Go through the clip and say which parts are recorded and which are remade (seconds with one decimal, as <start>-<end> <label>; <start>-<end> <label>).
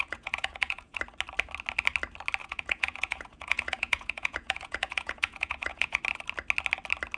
0.0-1.0 remade; 1.0-2.4 recorded; 2.4-6.0 remade; 6.0-7.2 recorded